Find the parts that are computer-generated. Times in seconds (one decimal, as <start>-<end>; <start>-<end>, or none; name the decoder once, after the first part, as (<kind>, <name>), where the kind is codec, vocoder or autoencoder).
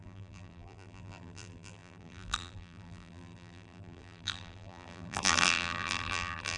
0.0-6.6 (vocoder, BigVGAN v2)